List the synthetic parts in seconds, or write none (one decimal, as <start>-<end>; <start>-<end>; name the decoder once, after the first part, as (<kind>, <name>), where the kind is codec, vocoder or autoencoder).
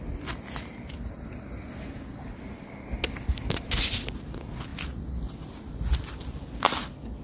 none